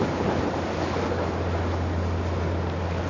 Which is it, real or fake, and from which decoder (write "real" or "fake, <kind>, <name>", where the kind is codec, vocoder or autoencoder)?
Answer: real